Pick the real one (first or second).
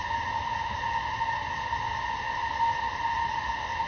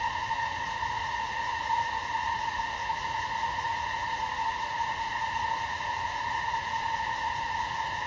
first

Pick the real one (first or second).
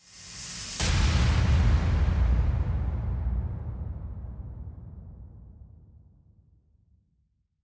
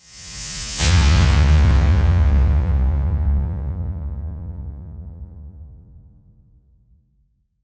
first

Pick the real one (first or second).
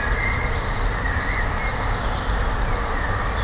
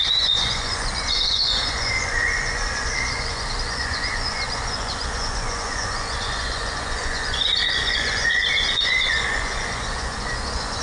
first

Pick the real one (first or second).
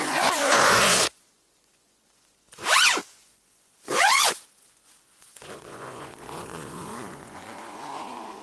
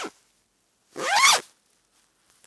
second